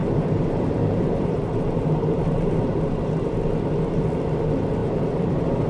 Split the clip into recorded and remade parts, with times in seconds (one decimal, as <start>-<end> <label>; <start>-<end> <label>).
0.0-3.4 remade; 3.4-4.8 recorded; 4.8-5.7 remade